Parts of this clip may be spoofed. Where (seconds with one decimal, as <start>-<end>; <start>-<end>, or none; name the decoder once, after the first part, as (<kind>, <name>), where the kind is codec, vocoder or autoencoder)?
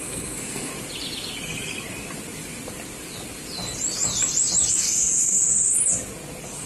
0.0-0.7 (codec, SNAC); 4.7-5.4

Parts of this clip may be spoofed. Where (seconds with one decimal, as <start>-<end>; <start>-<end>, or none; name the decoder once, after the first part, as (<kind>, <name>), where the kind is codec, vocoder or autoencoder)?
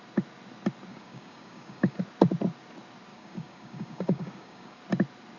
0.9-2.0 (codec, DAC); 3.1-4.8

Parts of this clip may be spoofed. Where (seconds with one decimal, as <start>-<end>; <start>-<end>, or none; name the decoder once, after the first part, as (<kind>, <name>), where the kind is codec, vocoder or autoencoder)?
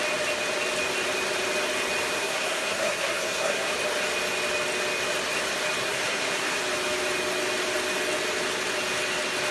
2.2-3.7 (codec, SNAC); 5.8-6.6